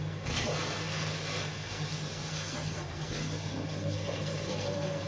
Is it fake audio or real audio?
fake